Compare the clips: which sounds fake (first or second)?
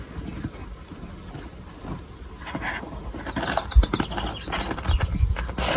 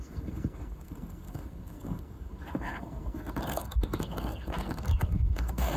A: second